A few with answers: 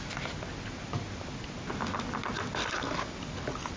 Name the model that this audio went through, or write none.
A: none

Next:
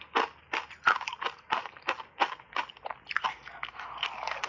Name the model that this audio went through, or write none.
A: none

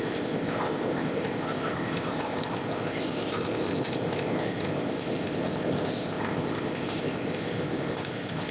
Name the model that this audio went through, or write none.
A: codec, ZipCodec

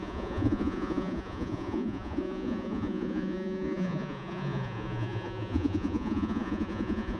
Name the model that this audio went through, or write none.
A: vocoder, Vocos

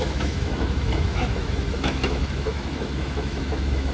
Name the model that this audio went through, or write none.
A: autoencoder, DAC-VAE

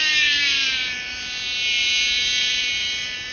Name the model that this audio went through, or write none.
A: vocoder, BigVGAN v2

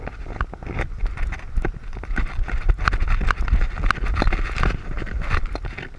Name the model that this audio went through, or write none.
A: none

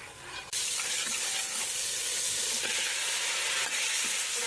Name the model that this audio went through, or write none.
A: none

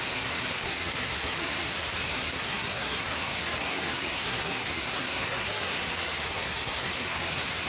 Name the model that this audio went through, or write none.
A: codec, SNAC